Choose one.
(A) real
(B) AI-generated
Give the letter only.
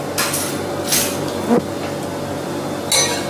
A